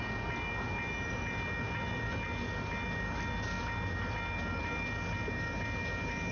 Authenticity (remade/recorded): recorded